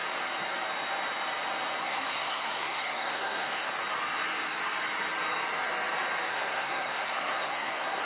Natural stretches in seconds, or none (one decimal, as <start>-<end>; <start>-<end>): 0.0-1.8; 3.7-6.3